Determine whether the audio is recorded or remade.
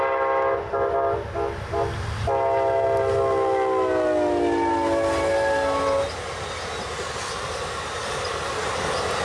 recorded